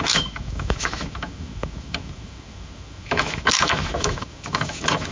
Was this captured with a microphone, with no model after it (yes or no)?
no